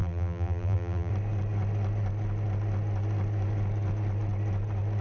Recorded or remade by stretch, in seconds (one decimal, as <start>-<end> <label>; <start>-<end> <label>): 0.0-1.1 remade; 1.1-5.0 recorded